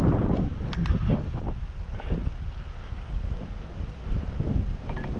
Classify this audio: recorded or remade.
recorded